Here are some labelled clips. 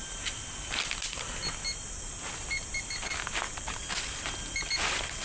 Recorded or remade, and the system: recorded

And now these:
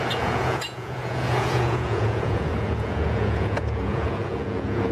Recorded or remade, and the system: remade, vocoder, Vocos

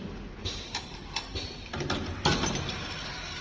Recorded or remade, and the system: recorded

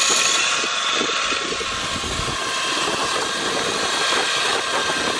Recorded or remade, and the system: recorded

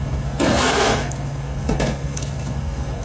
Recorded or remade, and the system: remade, codec, SNAC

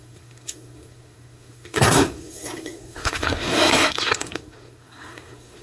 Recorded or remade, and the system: remade, codec, SNAC